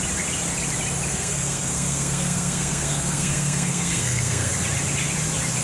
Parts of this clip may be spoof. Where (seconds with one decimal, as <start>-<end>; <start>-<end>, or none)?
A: 1.1-4.5